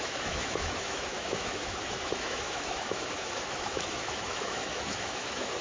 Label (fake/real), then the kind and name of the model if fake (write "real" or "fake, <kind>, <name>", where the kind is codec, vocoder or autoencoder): fake, autoencoder, DAC-VAE